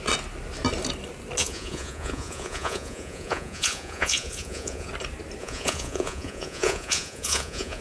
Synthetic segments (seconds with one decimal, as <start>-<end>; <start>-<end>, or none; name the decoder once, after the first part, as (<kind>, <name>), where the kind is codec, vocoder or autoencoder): 1.4-4.9 (vocoder, Vocos); 5.4-7.8